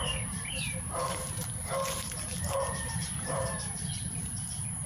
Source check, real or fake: fake